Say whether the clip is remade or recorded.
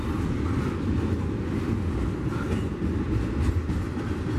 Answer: recorded